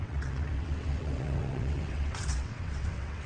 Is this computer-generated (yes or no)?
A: yes